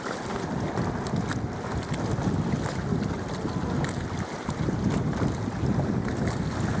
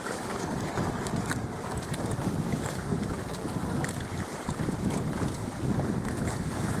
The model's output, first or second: second